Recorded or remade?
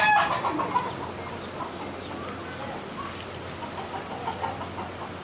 recorded